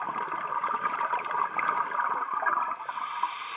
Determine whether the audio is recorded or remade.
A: recorded